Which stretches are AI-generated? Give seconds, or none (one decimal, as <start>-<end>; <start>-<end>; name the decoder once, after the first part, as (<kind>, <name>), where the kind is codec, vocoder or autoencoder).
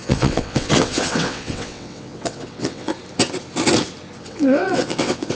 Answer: 0.0-2.9 (vocoder, WaveNeXt); 4.2-5.3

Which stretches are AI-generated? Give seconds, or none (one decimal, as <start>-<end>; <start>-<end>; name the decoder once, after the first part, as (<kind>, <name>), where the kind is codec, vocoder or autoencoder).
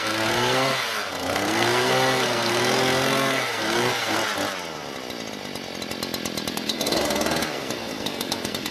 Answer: 0.0-4.2 (codec, SNAC); 6.5-8.7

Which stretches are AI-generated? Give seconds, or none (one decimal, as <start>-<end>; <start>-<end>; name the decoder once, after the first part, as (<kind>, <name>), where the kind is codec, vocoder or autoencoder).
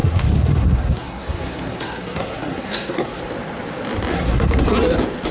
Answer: 0.0-3.2 (codec, SNAC); 4.1-4.7